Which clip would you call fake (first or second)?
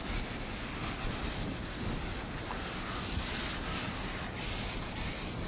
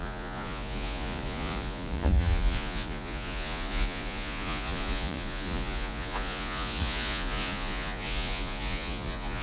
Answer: second